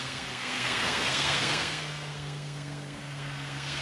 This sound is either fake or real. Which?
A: fake